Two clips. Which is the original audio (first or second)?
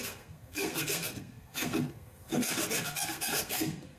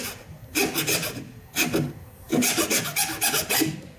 second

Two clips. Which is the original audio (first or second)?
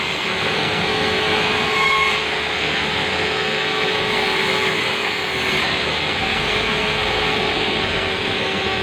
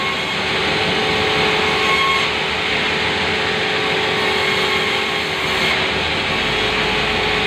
second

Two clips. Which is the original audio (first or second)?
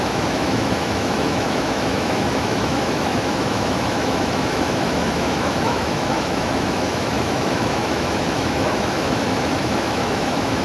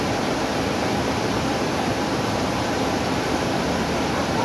second